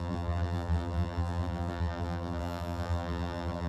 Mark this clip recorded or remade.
remade